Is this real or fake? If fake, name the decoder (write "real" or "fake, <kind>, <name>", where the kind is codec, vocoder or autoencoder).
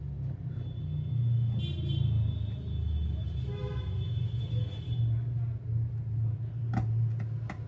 real